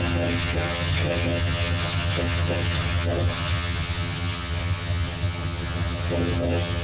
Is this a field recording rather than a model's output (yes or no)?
no